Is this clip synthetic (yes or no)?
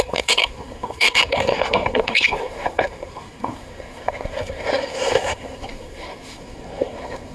yes